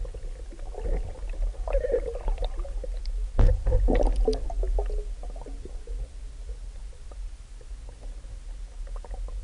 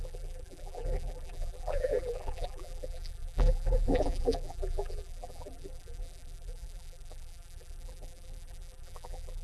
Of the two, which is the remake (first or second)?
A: second